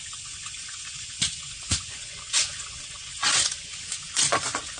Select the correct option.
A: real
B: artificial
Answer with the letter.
B